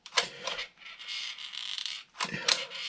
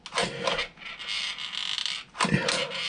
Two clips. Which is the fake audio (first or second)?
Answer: first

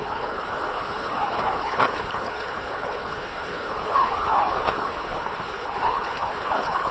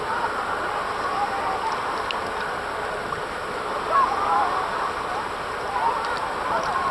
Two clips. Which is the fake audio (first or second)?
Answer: first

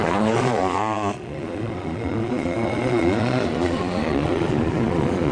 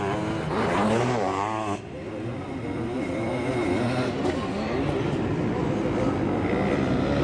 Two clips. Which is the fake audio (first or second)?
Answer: first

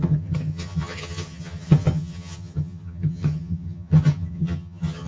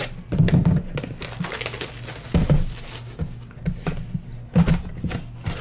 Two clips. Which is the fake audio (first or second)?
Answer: first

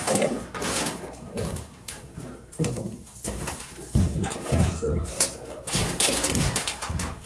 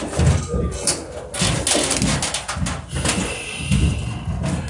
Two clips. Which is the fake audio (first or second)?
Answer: first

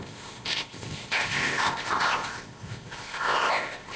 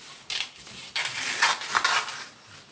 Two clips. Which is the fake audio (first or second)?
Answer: first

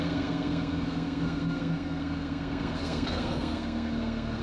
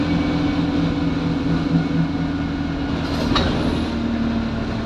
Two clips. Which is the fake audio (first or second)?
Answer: first